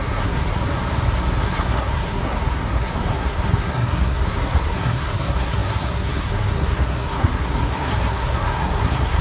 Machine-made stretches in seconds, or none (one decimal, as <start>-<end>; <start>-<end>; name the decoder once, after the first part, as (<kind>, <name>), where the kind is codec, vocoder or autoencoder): 0.0-0.7 (codec, SNAC); 1.4-9.2

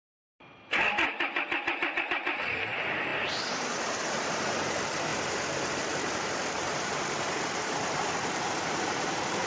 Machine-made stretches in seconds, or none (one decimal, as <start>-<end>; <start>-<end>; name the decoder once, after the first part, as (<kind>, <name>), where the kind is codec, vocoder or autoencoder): 0.0-0.5 (vocoder, BigVGAN v2); 2.0-9.5

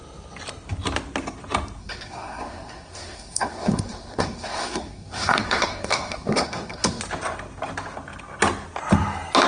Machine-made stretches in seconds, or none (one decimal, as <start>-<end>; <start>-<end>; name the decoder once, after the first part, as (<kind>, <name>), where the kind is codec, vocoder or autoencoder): 1.8-7.0 (codec, SNAC)

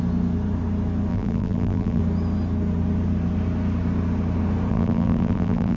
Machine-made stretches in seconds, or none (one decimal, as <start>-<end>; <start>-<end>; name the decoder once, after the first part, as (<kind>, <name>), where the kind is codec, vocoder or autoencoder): 1.1-2.0 (vocoder, BigVGAN v2); 4.7-5.8

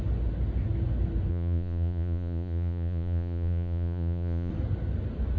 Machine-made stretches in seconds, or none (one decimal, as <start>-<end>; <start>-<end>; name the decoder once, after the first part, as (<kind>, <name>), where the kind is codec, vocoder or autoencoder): 1.3-4.5 (vocoder, Vocos)

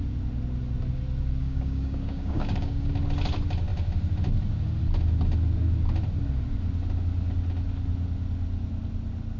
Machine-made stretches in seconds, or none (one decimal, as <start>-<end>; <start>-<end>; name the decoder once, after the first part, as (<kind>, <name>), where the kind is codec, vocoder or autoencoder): 1.4-2.9 (codec, DAC)